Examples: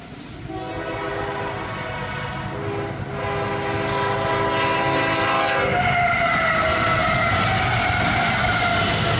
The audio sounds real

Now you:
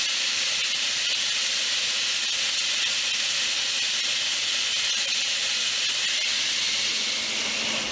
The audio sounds real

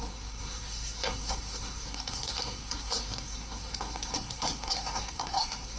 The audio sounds fake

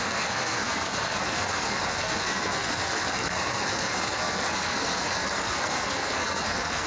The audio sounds fake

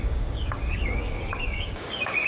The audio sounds fake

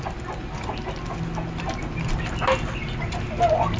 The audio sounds real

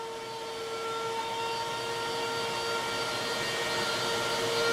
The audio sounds real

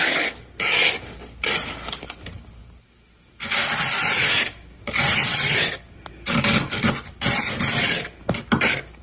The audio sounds real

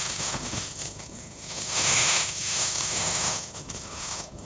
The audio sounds fake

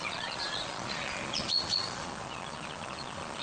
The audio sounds fake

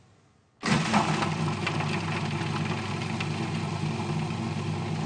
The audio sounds real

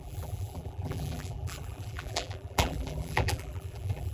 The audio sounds fake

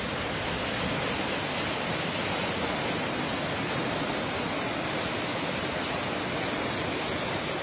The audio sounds real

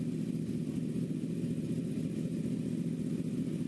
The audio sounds real